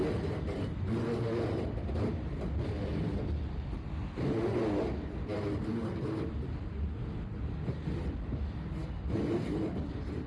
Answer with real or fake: real